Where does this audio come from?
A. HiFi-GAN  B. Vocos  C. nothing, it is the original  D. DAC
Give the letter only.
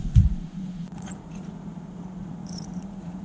B